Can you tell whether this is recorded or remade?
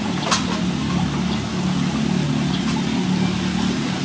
recorded